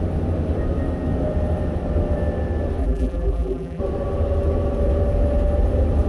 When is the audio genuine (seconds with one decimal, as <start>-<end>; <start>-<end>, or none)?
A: 0.0-2.8; 3.8-6.1